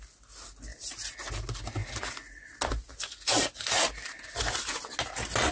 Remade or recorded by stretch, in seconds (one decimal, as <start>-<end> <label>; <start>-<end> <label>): 0.0-5.5 recorded